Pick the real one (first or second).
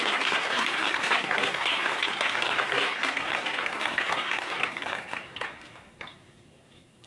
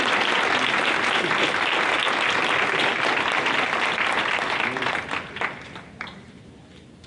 second